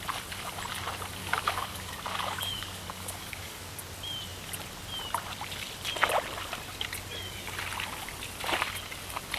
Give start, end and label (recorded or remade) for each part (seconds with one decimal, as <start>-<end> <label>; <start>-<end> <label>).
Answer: 0.0-1.2 recorded; 1.2-3.7 remade; 3.7-9.4 recorded

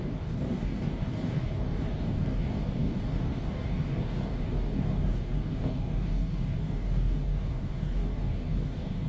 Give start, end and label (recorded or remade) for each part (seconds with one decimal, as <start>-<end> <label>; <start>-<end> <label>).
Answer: 0.0-9.1 remade

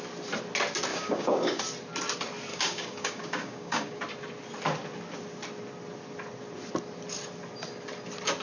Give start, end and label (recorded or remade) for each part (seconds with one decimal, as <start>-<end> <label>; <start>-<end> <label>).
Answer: 0.0-0.9 recorded; 0.9-1.6 remade; 1.6-2.5 recorded; 2.5-4.0 remade; 4.0-8.4 recorded

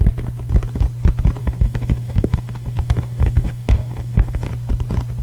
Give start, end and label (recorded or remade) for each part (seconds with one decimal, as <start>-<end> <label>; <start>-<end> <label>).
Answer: 0.0-1.4 recorded; 1.4-4.5 remade; 4.5-5.2 recorded

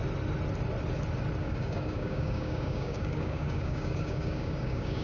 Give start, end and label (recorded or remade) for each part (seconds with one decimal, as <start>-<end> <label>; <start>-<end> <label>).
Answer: 0.0-1.4 recorded; 1.4-5.0 remade

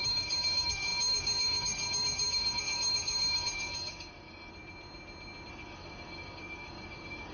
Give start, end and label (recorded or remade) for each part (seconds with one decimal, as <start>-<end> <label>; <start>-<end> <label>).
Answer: 0.0-4.5 remade; 4.5-5.5 recorded; 5.5-7.3 remade